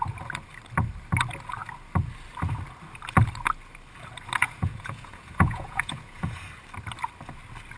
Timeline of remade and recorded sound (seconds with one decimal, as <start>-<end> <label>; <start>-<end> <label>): 0.0-4.4 recorded; 4.4-6.4 remade; 6.4-7.8 recorded